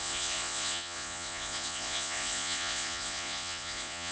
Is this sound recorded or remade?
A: remade